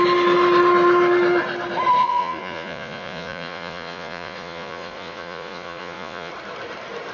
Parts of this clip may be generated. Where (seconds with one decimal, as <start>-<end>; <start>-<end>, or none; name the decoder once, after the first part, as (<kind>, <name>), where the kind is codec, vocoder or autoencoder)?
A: 2.0-6.3 (vocoder, Vocos)